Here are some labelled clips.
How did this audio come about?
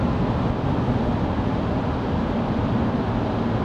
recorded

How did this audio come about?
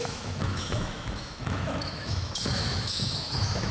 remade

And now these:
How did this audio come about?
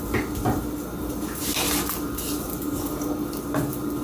recorded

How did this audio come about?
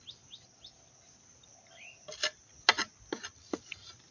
recorded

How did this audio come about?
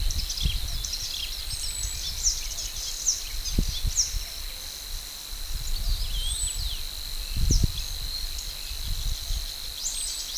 recorded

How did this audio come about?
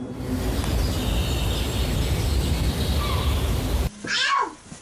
recorded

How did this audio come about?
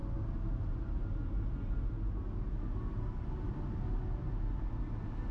recorded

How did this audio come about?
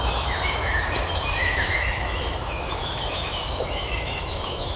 remade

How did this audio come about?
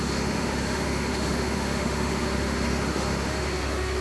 remade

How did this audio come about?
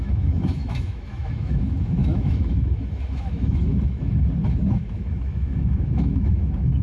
remade